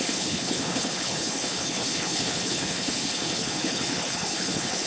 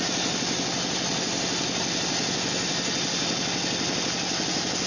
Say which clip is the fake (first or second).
first